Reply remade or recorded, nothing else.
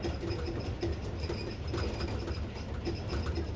recorded